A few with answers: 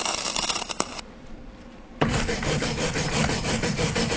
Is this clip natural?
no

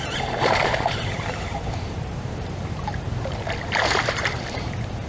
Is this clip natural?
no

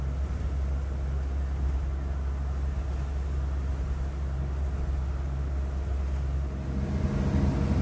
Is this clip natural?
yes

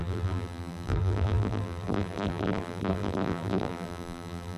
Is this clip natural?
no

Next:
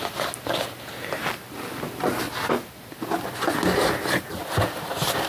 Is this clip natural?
yes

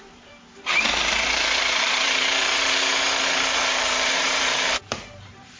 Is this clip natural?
no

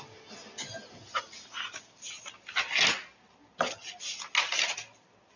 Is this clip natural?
yes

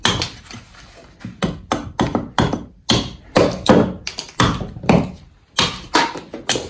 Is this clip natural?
yes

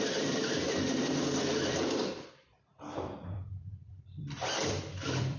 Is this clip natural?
no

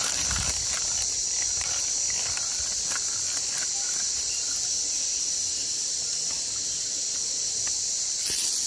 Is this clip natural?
yes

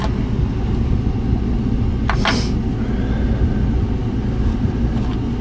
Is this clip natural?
yes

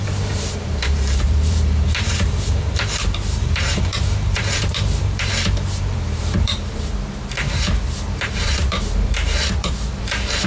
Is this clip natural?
no